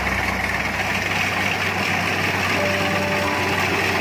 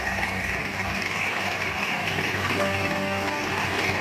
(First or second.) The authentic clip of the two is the first